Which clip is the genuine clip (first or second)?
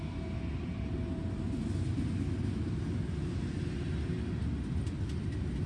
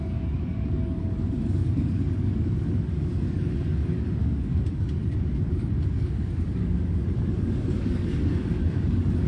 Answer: first